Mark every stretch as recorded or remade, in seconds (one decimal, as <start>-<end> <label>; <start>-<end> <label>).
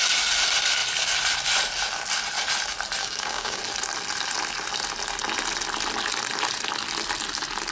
0.0-3.0 recorded; 3.0-3.6 remade; 3.6-7.7 recorded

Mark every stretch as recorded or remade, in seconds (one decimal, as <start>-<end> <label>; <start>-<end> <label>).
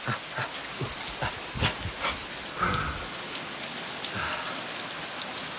0.0-5.6 recorded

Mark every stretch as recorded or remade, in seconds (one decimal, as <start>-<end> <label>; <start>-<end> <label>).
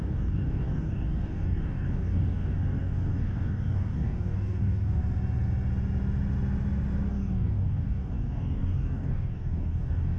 0.0-5.0 remade; 5.0-7.1 recorded; 7.1-10.2 remade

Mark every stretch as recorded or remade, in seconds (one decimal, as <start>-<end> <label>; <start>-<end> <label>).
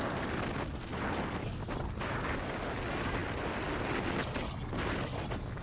0.0-5.6 recorded